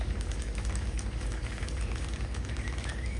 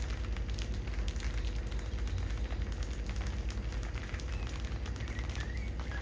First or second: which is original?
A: second